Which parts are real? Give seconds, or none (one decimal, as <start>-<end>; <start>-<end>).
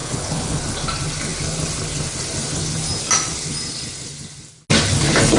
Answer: 0.6-5.4